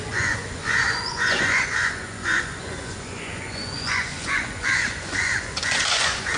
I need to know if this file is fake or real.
fake